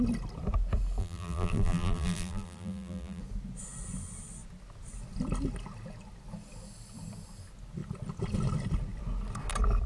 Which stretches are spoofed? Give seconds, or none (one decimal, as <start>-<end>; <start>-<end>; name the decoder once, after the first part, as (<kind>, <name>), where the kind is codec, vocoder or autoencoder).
1.0-3.2 (vocoder, BigVGAN v2)